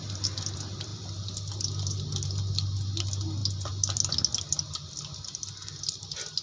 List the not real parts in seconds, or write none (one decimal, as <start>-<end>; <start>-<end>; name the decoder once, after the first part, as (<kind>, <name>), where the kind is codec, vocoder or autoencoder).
none